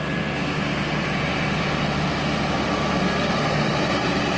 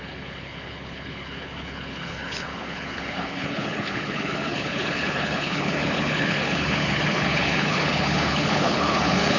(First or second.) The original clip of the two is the first